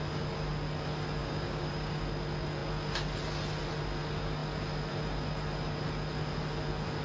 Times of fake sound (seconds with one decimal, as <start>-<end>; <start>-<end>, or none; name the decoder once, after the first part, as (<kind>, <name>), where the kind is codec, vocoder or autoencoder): 1.2-2.0 (codec, DAC)